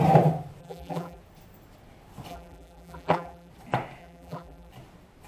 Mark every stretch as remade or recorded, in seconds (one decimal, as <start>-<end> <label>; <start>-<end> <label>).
0.0-0.6 recorded; 0.6-1.2 remade; 1.2-2.3 recorded; 2.3-3.5 remade; 3.5-4.0 recorded; 4.0-4.7 remade; 4.7-5.3 recorded